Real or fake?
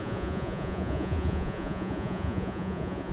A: fake